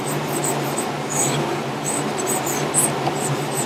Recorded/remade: recorded